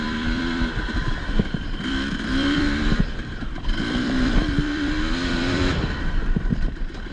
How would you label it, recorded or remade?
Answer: remade